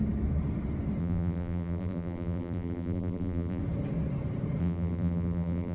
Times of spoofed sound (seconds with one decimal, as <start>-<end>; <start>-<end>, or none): 1.0-3.6; 4.6-5.7